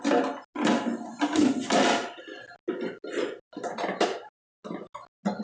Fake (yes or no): no